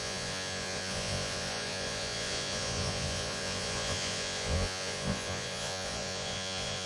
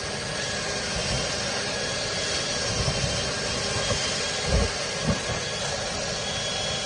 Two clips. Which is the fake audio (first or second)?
first